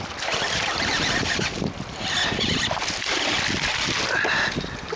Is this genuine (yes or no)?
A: yes